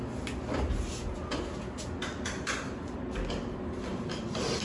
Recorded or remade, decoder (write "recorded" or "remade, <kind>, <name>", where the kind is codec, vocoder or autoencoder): recorded